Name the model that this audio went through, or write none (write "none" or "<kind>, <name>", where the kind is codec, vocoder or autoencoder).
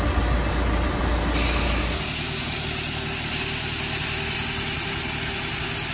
none